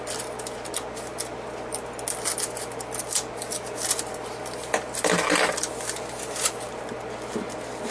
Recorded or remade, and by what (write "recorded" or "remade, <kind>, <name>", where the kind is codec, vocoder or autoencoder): recorded